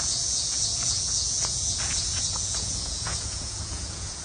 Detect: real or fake fake